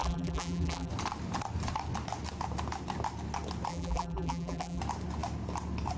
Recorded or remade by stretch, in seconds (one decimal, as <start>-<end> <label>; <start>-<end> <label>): 0.0-0.9 remade; 0.9-3.7 recorded; 3.7-4.8 remade; 4.8-6.0 recorded